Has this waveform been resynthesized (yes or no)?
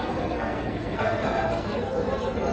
yes